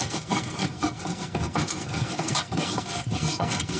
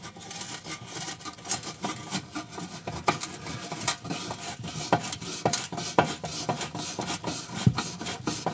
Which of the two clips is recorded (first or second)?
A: second